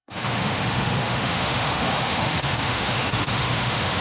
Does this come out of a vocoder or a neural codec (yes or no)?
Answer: yes